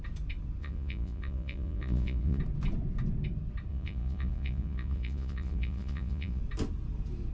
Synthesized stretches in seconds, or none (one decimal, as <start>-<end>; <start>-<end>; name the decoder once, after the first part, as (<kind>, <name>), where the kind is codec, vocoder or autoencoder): 0.6-2.4 (vocoder, Vocos); 3.7-6.4